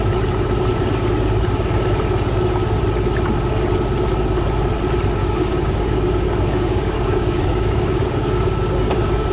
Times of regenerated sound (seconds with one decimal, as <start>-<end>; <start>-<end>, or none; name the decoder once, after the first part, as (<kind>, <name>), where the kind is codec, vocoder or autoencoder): 5.2-9.3 (codec, DAC)